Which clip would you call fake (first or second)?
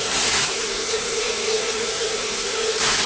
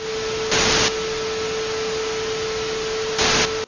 first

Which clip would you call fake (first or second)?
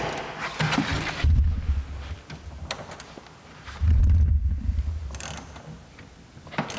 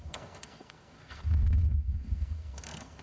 second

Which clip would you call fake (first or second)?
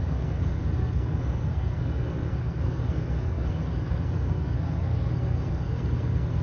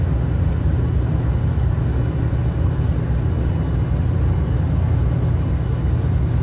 first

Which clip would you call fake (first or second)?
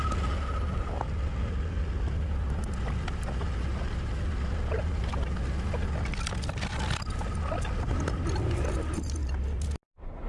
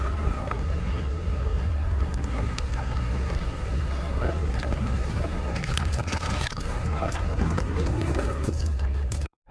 second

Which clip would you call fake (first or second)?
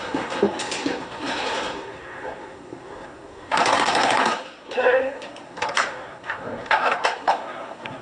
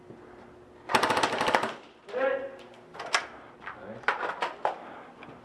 first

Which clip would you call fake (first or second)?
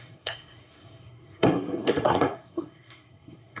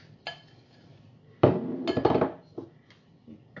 first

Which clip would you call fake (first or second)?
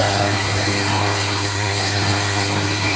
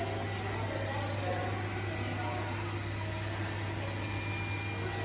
first